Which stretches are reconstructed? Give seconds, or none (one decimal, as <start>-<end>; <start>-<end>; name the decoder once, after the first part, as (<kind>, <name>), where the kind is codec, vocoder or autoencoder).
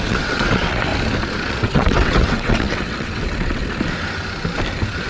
0.0-0.9 (vocoder, WaveNeXt); 1.5-3.6